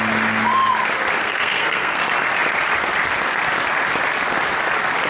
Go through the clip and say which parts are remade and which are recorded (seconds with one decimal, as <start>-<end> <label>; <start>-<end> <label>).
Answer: 0.0-1.2 recorded; 1.2-2.0 remade; 2.0-5.1 recorded